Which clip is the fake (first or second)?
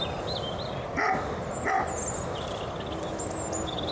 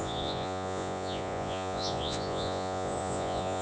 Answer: second